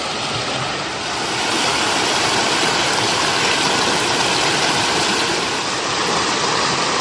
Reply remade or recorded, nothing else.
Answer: recorded